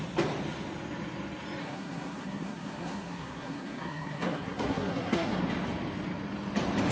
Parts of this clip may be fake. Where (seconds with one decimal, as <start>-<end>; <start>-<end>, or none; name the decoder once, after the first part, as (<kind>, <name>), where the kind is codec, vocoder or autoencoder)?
1.6-5.4 (codec, SNAC)